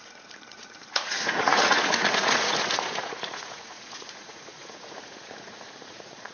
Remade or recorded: remade